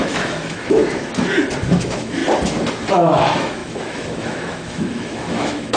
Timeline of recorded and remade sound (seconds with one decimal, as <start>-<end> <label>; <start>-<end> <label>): 0.0-0.8 remade; 0.8-1.7 recorded; 1.7-2.2 remade; 2.2-2.9 recorded; 2.9-5.8 remade